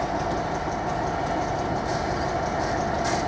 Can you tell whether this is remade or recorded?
recorded